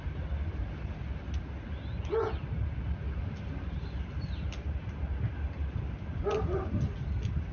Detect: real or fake real